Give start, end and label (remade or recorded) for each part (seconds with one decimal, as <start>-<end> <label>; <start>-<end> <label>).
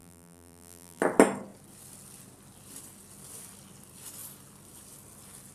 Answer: 0.0-1.0 remade; 1.0-5.5 recorded